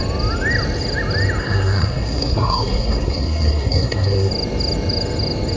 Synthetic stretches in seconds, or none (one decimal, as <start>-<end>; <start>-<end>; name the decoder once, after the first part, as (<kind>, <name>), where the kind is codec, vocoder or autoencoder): 1.4-4.3 (codec, SNAC)